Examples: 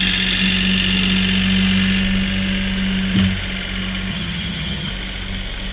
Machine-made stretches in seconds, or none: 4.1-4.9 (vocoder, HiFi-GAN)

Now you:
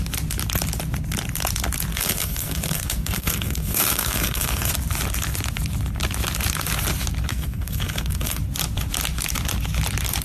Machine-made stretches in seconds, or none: 1.9-4.7 (codec, SNAC); 7.3-8.4